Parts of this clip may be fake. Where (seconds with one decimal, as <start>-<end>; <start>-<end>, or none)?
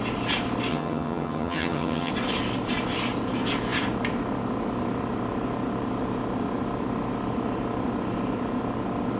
0.7-2.1